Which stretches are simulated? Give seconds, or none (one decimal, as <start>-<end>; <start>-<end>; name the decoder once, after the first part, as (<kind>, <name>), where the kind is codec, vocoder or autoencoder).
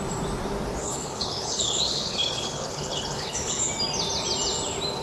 0.8-3.7 (codec, HILCodec)